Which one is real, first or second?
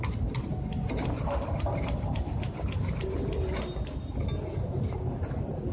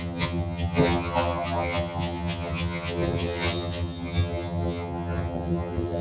first